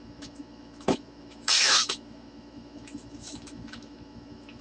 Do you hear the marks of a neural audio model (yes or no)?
yes